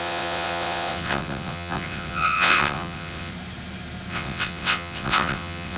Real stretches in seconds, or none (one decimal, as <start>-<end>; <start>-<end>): 3.3-4.1